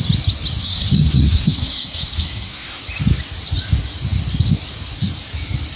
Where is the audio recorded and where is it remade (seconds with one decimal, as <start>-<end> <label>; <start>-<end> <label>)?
0.0-0.6 recorded; 0.6-2.8 remade; 2.8-5.8 recorded